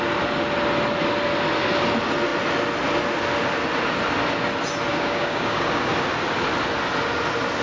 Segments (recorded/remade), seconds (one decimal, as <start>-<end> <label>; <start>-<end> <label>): 0.0-4.9 recorded; 4.9-5.9 remade; 5.9-7.6 recorded